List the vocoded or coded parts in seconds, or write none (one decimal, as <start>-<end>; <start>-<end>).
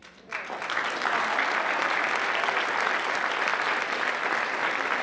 none